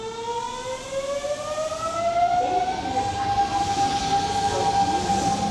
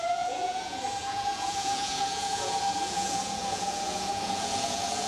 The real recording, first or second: first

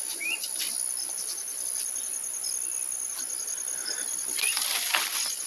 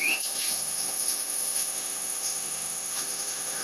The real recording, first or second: first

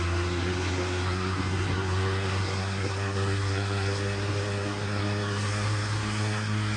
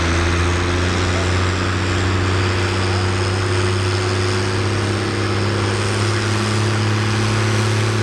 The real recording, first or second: second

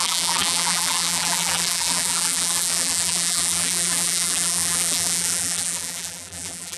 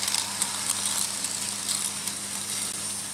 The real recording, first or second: second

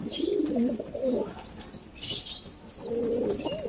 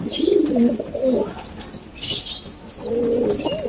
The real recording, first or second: second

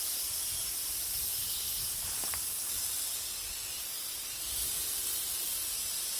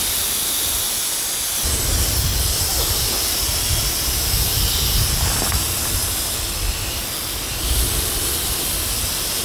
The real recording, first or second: second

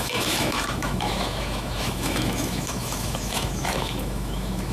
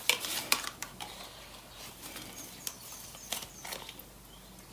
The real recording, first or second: second